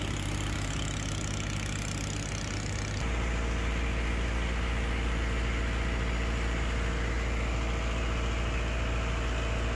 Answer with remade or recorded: recorded